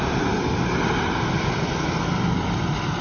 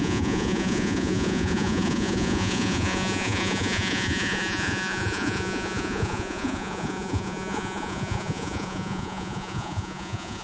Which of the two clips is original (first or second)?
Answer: first